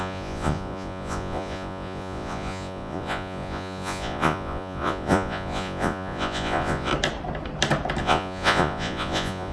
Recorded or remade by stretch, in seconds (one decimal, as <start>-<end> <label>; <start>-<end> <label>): 0.0-6.9 remade; 6.9-8.0 recorded; 8.0-9.5 remade